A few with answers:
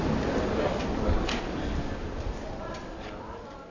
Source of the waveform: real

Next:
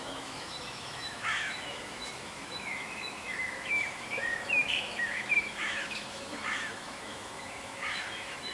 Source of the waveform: fake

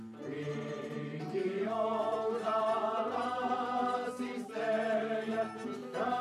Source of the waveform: fake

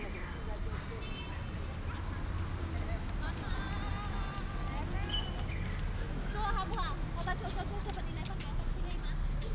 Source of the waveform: real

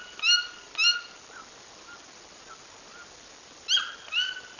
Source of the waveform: real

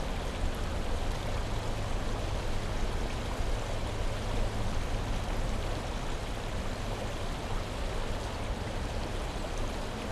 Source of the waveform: real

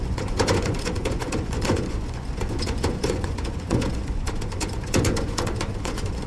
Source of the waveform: fake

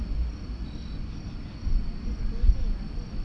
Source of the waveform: real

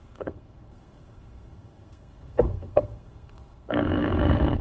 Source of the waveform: fake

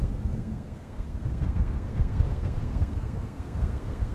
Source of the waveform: fake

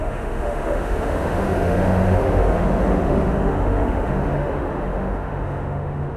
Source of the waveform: fake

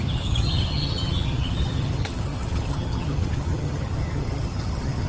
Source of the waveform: fake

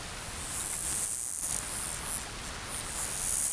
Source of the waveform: real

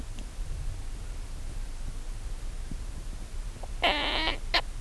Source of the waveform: real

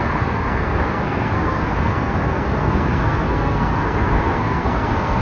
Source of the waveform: fake